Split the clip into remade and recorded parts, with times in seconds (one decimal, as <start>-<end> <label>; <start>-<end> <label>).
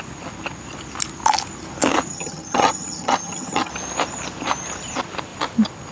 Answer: 0.0-2.1 recorded; 2.1-3.7 remade; 3.7-5.9 recorded